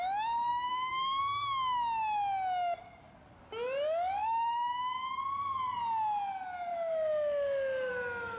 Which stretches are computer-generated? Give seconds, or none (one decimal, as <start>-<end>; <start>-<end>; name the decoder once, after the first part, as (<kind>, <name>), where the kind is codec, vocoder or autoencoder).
0.5-1.2 (autoencoder, DAC-VAE); 4.2-5.2; 6.7-7.9